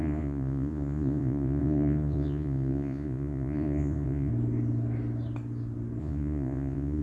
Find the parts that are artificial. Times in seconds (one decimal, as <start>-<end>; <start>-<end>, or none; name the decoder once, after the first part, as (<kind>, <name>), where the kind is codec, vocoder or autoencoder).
0.0-4.3 (vocoder, Vocos); 6.0-7.0